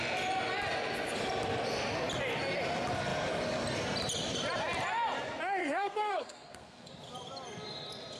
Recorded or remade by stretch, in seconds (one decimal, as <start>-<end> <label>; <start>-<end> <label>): 0.0-5.6 recorded; 5.6-6.9 remade; 6.9-8.2 recorded

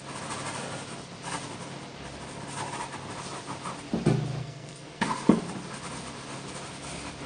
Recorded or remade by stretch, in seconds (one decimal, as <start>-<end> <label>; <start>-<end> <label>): 0.0-4.4 recorded; 4.4-5.4 remade; 5.4-7.3 recorded